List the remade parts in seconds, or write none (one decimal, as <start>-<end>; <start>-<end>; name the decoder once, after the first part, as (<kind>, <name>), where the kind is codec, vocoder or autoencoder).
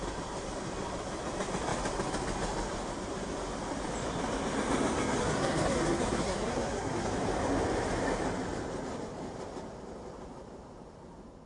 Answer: 5.2-7.1 (codec, SNAC)